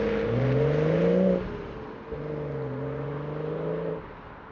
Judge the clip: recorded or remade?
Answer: recorded